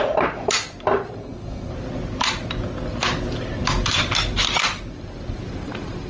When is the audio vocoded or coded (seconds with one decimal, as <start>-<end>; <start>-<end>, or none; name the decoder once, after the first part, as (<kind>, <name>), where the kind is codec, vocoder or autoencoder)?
1.2-1.7 (codec, SNAC)